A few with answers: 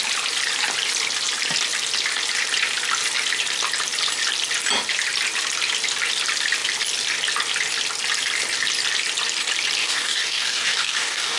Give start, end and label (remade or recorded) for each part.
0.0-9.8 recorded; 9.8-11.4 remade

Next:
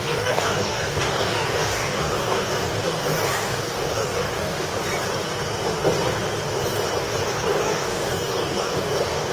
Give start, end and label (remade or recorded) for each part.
0.0-4.7 remade; 4.7-7.0 recorded; 7.0-9.3 remade

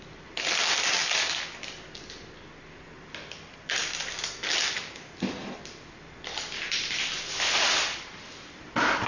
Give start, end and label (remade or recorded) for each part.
0.0-9.1 recorded

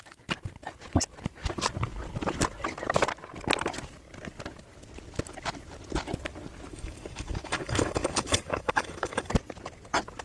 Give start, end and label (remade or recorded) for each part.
0.0-6.7 recorded; 6.7-9.3 remade; 9.3-10.2 recorded

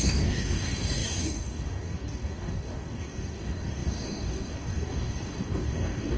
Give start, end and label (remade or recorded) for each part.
0.0-6.2 remade

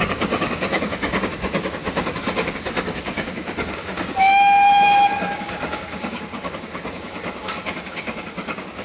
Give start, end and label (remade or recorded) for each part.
0.0-8.8 remade